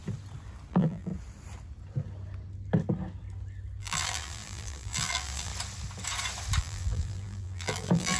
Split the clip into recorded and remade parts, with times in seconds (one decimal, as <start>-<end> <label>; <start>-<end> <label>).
0.0-0.7 recorded; 0.7-1.1 remade; 1.1-3.8 recorded; 3.8-5.5 remade; 5.5-6.6 recorded; 6.6-8.2 remade